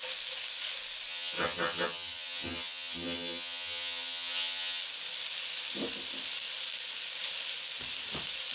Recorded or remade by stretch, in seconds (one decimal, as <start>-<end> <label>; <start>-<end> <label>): 0.0-1.1 recorded; 1.1-4.8 remade; 4.8-8.5 recorded